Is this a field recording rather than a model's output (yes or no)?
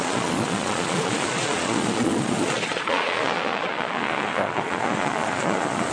no